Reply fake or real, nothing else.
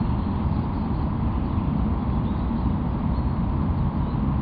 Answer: real